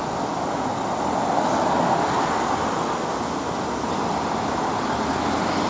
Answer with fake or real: real